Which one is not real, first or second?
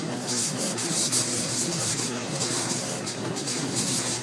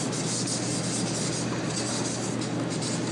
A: first